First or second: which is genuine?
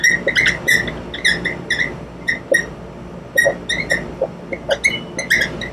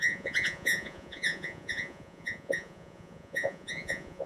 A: first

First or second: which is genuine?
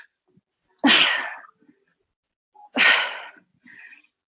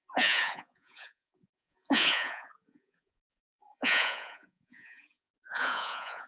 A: first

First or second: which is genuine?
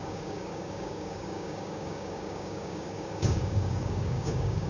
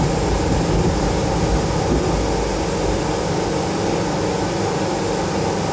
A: second